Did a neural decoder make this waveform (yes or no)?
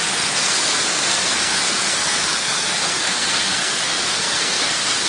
yes